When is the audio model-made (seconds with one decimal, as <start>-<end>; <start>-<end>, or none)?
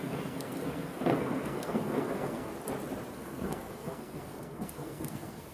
0.0-2.5; 3.1-5.5